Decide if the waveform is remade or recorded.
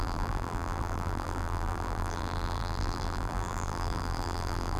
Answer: remade